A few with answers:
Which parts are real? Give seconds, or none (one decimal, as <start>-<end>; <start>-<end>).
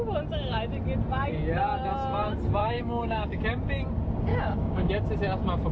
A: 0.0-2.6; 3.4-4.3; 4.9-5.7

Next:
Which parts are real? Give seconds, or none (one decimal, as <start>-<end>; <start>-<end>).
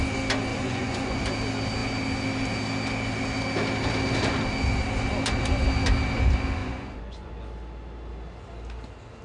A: 0.0-0.5; 1.2-6.6; 7.3-9.2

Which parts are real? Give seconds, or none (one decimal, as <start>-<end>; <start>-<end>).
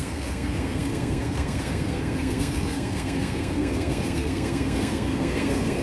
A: none